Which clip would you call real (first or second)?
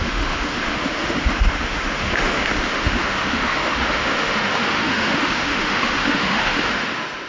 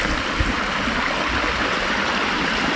second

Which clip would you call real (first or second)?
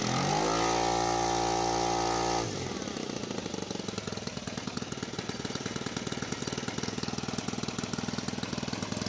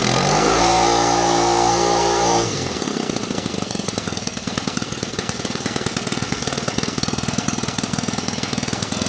first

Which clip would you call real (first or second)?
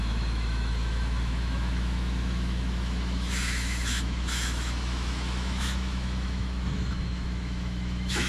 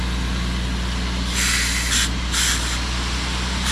second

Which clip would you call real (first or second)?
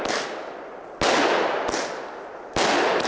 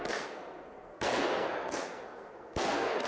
first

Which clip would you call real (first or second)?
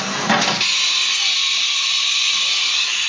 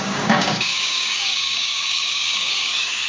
first